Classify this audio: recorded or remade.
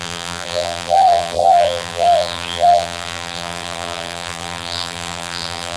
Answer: remade